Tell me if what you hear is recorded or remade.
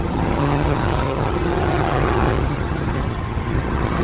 remade